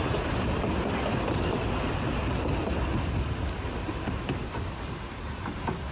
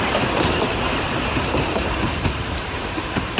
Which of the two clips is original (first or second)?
first